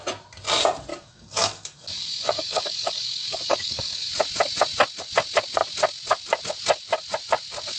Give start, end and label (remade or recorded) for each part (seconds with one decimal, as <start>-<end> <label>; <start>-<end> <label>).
0.0-0.9 recorded; 0.9-4.1 remade; 4.1-7.8 recorded